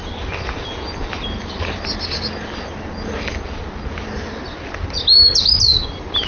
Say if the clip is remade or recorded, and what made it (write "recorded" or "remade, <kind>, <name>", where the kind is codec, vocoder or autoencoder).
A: recorded